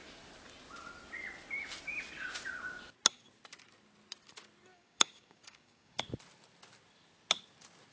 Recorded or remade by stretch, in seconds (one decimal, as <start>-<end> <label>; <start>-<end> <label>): 0.0-4.7 recorded; 4.7-6.0 remade; 6.0-7.9 recorded